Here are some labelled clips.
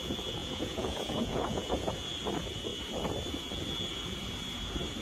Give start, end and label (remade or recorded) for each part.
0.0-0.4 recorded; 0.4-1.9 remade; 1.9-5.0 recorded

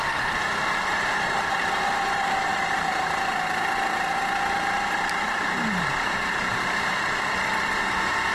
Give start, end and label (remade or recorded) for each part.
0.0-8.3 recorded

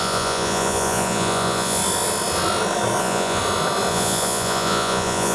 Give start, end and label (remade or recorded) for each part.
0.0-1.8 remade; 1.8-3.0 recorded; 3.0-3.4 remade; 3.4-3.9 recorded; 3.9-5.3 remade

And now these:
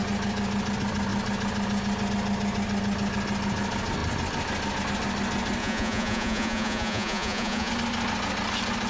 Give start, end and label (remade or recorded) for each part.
0.0-5.6 recorded; 5.6-7.7 remade; 7.7-8.9 recorded

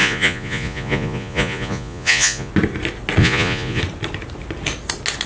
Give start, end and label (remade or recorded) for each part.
0.0-2.5 remade; 2.5-3.2 recorded; 3.2-3.8 remade; 3.8-5.3 recorded

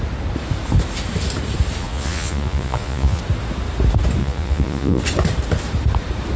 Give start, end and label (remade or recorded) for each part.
0.0-1.8 recorded; 1.8-3.2 remade; 3.2-4.2 recorded; 4.2-5.0 remade; 5.0-6.4 recorded

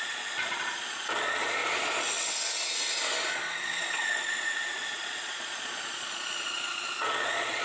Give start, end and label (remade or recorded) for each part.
0.0-1.6 remade; 1.6-3.3 recorded; 3.3-7.6 remade

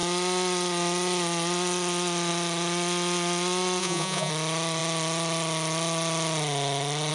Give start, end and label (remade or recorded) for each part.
0.0-3.8 recorded; 3.8-4.3 remade; 4.3-7.1 recorded